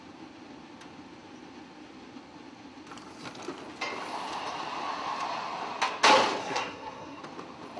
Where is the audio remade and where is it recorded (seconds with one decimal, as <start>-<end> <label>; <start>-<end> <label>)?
0.0-6.4 recorded; 6.4-7.2 remade; 7.2-7.8 recorded